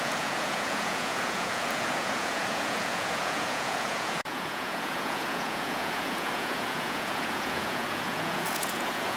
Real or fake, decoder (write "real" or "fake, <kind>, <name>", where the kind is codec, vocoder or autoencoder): fake, vocoder, Vocos